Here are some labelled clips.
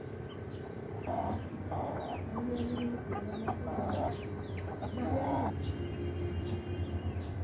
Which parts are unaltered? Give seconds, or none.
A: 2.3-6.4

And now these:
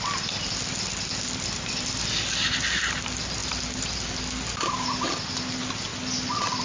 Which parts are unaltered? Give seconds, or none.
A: 0.0-6.6

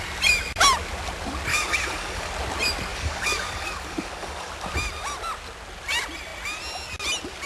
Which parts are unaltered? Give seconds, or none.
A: 0.0-1.5; 2.3-2.9; 4.5-7.5